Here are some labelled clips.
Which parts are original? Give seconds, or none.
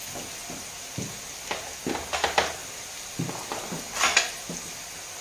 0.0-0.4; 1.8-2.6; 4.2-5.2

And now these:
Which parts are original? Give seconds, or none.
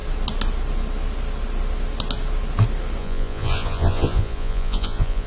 0.0-3.0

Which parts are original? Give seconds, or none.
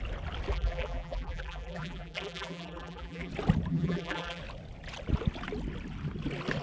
0.0-0.5; 3.3-3.7; 4.4-6.6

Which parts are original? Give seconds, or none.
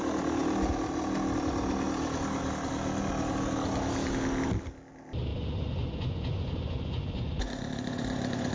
0.0-5.3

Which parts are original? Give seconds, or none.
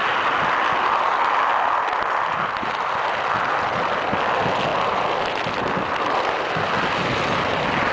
0.0-7.9